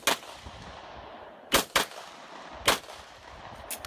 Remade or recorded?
recorded